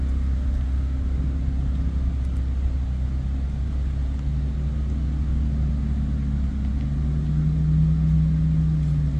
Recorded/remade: recorded